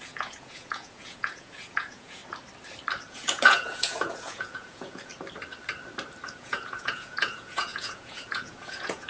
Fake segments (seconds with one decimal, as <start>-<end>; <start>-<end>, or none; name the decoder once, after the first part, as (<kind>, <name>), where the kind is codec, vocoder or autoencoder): 0.0-2.2 (vocoder, Vocos); 3.1-5.1; 6.3-9.1